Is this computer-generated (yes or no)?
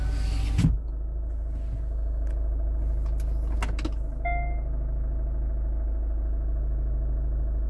no